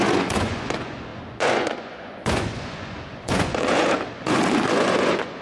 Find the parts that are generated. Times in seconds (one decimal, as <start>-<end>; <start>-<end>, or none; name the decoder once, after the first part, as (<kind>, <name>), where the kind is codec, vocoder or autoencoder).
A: 0.0-5.4 (vocoder, Vocos)